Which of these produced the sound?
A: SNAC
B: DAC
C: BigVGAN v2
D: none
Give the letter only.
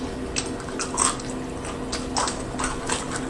D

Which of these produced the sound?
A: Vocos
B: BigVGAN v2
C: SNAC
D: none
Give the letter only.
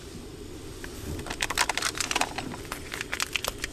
D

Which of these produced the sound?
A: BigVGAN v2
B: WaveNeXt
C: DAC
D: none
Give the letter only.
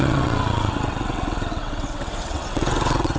B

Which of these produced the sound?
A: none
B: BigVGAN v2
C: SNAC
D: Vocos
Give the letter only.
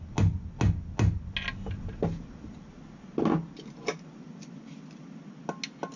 A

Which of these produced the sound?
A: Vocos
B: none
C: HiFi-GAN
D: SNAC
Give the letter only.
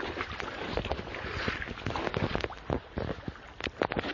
B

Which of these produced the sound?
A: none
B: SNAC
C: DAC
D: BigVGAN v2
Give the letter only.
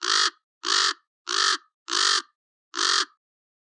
A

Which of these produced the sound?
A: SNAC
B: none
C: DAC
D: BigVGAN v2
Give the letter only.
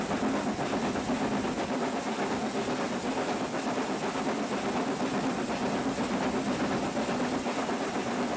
B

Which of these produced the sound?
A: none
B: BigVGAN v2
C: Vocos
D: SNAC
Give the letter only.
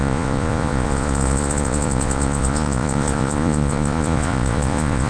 C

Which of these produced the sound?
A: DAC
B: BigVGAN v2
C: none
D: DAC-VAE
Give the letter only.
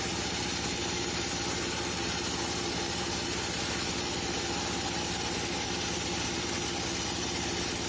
C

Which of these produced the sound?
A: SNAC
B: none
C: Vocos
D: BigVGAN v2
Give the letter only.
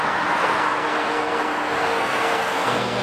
A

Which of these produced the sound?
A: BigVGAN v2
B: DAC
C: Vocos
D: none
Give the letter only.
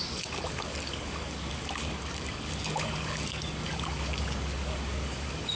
B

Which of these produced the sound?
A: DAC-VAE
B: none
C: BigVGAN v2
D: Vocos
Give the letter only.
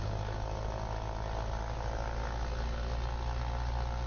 B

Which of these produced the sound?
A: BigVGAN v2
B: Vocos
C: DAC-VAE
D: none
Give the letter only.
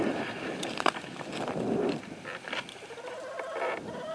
D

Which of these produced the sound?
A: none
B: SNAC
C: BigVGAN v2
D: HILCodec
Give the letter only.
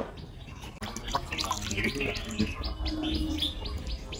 A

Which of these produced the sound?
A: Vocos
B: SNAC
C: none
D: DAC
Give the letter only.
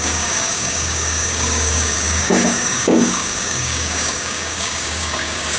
D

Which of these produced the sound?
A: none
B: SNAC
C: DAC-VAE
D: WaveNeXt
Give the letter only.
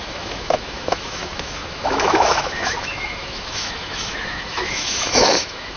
C